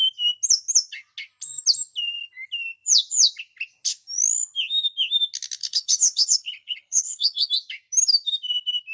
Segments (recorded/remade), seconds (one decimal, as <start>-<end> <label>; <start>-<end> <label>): 0.0-5.6 recorded; 5.6-7.5 remade; 7.5-8.9 recorded